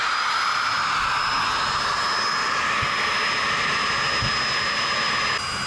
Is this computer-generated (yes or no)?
no